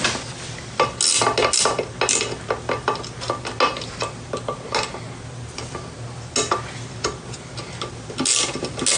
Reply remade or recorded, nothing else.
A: recorded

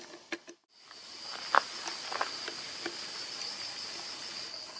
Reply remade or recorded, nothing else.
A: recorded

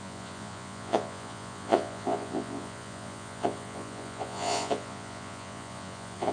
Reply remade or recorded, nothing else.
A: remade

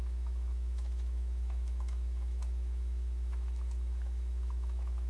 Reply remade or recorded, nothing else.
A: remade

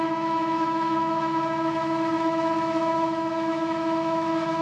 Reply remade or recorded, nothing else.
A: remade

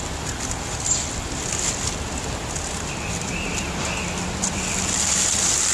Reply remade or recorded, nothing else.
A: recorded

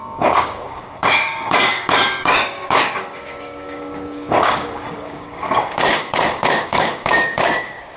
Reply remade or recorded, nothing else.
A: remade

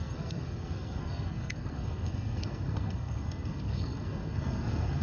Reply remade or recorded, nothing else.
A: remade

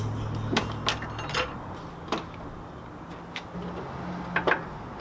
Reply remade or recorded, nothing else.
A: recorded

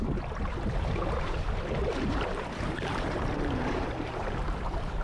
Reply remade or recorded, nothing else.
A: remade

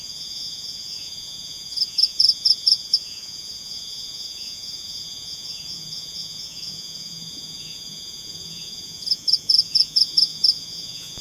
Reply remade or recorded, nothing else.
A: remade